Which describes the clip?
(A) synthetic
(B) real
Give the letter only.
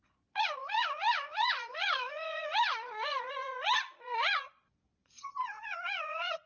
A